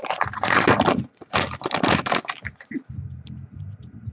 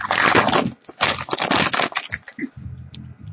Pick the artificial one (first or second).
first